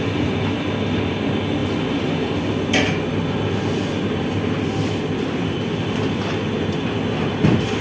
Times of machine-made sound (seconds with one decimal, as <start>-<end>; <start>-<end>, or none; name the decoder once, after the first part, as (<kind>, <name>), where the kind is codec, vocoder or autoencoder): none